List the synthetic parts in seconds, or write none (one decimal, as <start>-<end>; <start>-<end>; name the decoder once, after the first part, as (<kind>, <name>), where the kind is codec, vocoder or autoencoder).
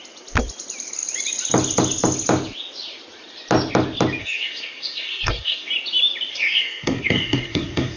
4.2-5.7 (codec, SNAC); 6.3-8.0